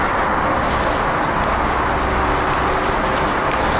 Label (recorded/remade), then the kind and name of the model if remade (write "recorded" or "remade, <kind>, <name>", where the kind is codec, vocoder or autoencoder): recorded